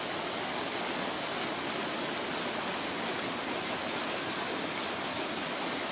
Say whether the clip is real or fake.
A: real